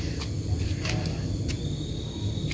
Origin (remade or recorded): recorded